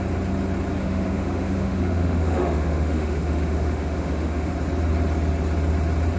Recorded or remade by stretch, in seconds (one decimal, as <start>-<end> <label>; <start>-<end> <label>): 0.0-0.8 recorded; 0.8-4.5 remade; 4.5-6.2 recorded